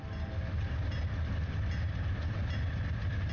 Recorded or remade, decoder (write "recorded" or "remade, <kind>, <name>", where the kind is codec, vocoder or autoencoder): recorded